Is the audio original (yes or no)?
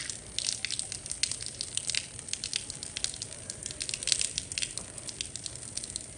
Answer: yes